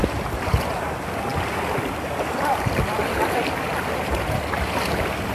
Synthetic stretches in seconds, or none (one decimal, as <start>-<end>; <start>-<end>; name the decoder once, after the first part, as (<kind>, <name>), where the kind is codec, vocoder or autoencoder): none